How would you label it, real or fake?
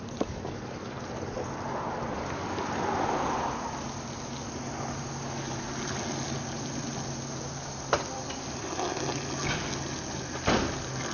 real